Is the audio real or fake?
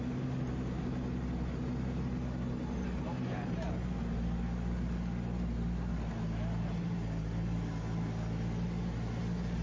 real